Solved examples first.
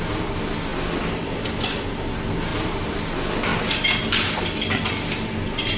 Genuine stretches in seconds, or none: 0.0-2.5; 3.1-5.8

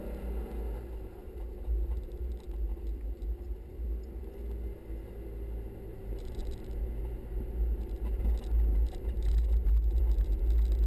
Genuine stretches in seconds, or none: 0.0-1.2; 2.2-5.9; 6.8-8.7; 10.0-10.9

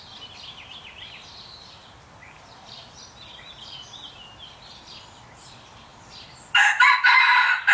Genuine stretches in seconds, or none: 0.0-5.9; 7.3-7.7